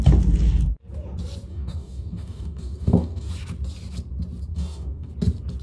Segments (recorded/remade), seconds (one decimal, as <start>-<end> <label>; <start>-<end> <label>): 0.0-1.5 recorded; 1.5-3.3 remade; 3.3-4.5 recorded; 4.5-5.1 remade; 5.1-5.6 recorded